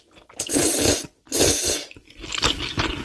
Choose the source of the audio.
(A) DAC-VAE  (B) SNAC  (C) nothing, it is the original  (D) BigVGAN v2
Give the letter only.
C